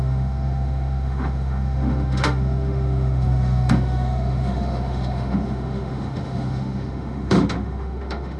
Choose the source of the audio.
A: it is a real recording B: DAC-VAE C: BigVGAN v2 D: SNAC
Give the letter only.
B